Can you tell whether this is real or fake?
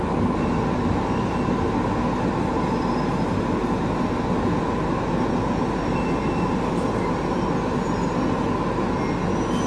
real